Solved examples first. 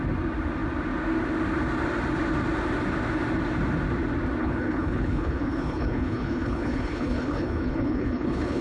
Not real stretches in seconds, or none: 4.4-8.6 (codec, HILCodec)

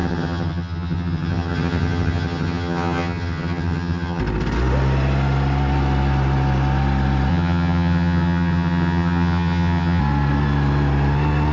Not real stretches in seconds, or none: 0.0-4.2 (vocoder, HiFi-GAN); 7.3-10.0